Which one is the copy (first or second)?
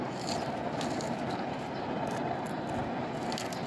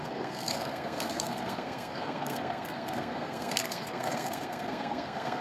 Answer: second